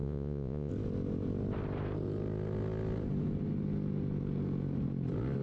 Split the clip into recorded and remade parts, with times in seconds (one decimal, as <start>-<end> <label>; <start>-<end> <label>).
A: 0.0-0.7 remade; 0.7-5.4 recorded